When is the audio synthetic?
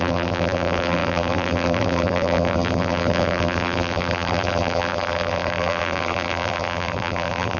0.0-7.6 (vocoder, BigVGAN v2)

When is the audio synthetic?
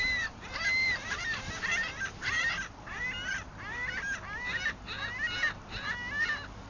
0.0-2.5 (vocoder, BigVGAN v2)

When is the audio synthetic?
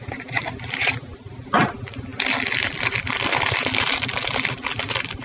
none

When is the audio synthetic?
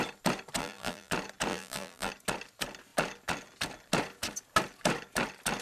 0.6-1.1 (vocoder, BigVGAN v2); 1.5-2.1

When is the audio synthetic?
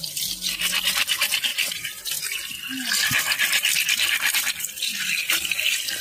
1.5-2.2 (vocoder, BigVGAN v2)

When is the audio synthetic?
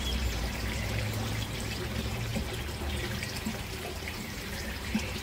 0.0-2.3 (vocoder, BigVGAN v2); 4.0-5.2